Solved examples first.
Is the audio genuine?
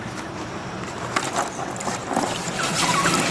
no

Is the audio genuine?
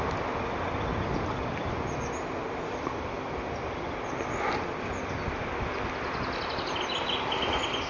yes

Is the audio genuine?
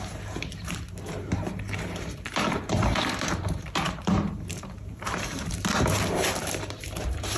no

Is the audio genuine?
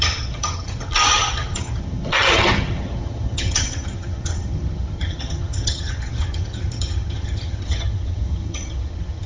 no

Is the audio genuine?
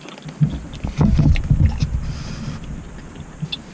yes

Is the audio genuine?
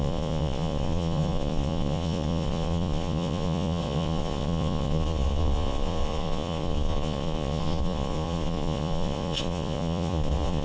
no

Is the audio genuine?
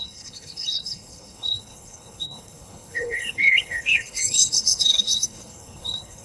no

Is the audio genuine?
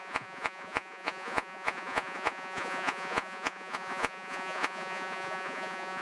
no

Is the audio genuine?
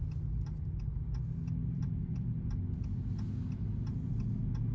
yes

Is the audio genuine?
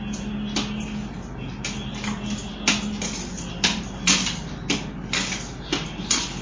yes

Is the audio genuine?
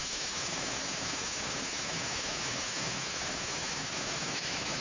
no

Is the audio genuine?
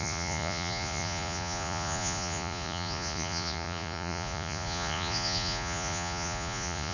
no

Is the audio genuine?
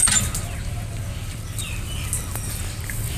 yes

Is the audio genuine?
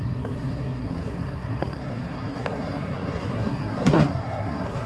no